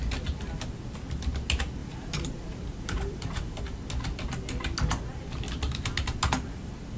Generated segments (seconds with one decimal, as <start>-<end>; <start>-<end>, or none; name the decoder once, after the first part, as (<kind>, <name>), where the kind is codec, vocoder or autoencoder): 1.8-3.6 (vocoder, BigVGAN v2)